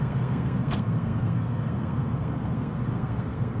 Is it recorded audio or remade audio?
remade